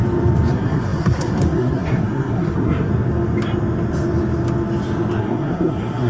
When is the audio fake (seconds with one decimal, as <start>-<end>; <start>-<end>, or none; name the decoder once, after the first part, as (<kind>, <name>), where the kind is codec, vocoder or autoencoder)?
0.5-2.9 (codec, SNAC); 5.2-6.1